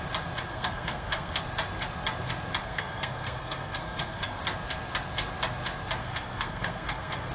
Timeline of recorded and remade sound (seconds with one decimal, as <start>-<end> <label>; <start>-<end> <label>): 0.0-0.5 recorded; 0.5-1.4 remade; 1.4-2.6 recorded; 2.6-4.4 remade; 4.4-6.0 recorded; 6.0-7.3 remade

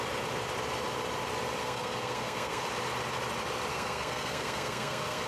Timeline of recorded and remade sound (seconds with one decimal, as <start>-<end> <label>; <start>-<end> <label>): 0.0-1.6 recorded; 1.6-2.6 remade; 2.6-3.7 recorded; 3.7-5.3 remade

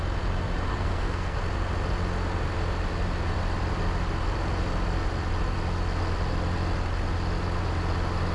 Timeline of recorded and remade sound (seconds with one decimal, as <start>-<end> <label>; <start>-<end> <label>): 0.0-0.7 recorded; 0.7-1.4 remade; 1.4-8.3 recorded

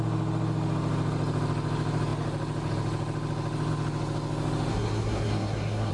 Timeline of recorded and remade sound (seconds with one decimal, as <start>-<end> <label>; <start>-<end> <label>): 0.0-4.7 recorded; 4.7-5.9 remade

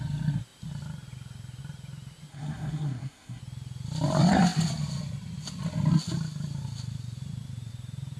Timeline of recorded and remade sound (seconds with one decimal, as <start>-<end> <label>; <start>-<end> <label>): 0.0-2.3 recorded; 2.3-3.4 remade; 3.4-8.2 recorded

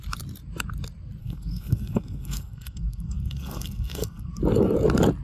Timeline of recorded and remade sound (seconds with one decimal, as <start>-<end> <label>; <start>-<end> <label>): 0.0-1.2 recorded; 1.2-4.3 remade; 4.3-5.2 recorded

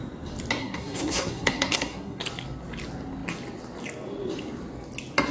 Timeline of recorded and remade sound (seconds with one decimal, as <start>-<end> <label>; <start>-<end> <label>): 0.0-0.6 recorded; 0.6-2.2 remade; 2.2-5.3 recorded

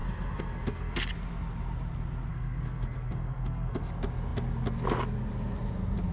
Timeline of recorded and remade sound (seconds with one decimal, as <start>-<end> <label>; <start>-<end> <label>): 0.0-1.1 remade; 1.1-2.3 recorded; 2.3-3.8 remade; 3.8-6.1 recorded